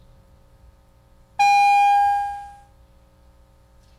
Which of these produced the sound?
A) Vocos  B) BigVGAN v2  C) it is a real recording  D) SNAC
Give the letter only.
C